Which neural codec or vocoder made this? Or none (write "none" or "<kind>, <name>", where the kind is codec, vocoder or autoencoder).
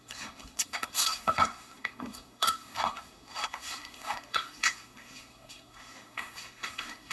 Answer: codec, SNAC